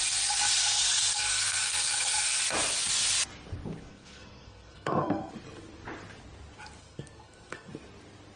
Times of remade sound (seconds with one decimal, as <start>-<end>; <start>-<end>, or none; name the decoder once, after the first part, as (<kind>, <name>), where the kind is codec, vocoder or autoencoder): 0.6-2.4 (codec, SNAC); 3.8-5.3; 6.8-7.7